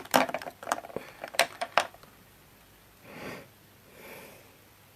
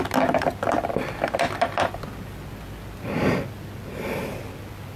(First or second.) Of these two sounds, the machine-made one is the first